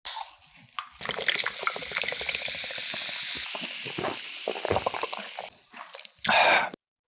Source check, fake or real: real